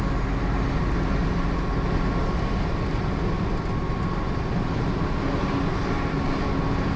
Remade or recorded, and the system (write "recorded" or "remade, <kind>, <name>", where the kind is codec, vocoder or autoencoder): recorded